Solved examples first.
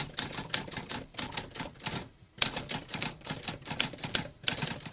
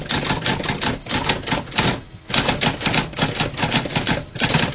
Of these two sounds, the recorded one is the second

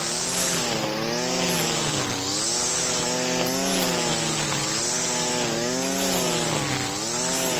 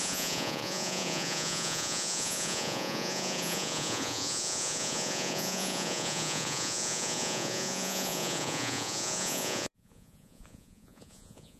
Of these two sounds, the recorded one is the first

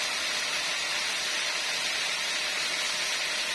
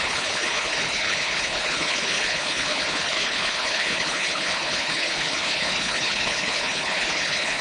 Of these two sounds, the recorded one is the first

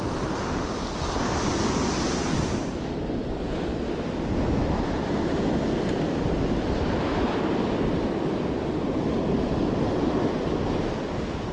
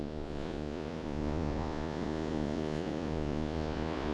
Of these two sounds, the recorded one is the first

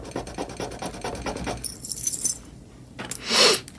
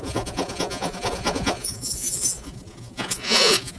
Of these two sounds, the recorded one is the first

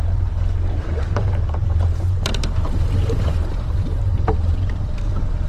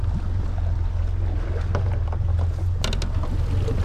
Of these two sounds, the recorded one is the second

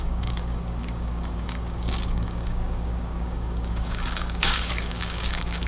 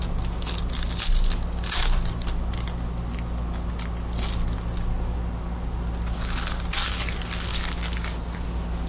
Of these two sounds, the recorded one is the second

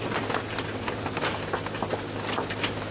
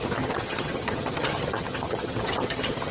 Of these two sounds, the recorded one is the first